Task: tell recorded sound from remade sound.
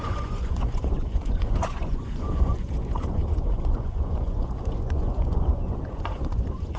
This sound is remade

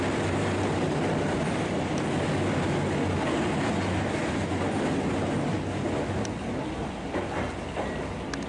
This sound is recorded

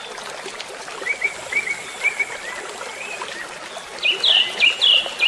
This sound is recorded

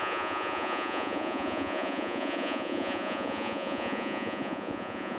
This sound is remade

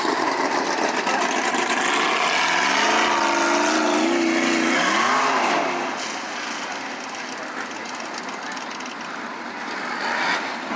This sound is recorded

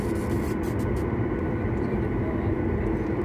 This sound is recorded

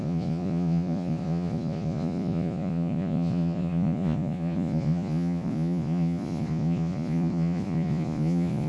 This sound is remade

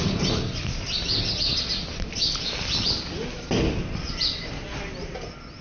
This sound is recorded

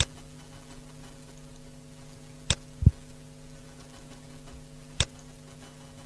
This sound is recorded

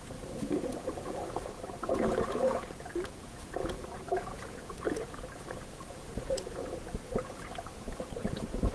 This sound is remade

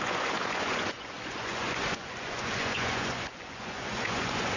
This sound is remade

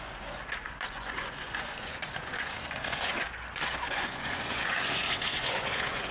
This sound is remade